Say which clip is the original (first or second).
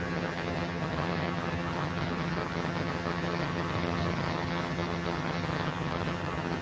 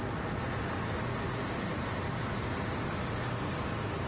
second